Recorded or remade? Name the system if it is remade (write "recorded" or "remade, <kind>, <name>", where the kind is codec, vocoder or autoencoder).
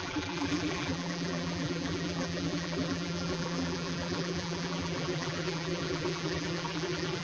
remade, vocoder, BigVGAN v2